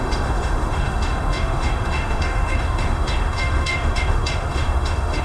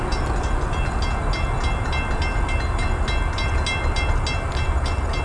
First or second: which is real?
second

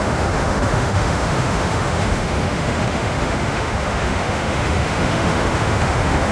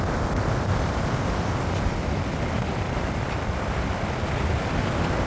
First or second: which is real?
second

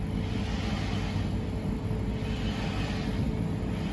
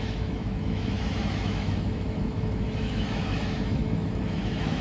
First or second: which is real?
first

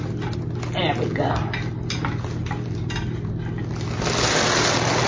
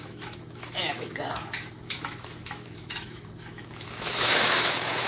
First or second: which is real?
first